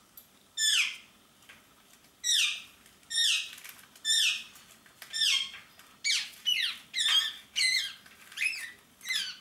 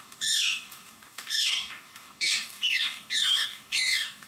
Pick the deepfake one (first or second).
second